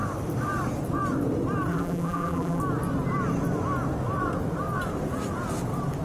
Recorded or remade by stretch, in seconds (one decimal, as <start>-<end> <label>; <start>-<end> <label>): 0.0-1.7 recorded; 1.7-2.6 remade; 2.6-6.0 recorded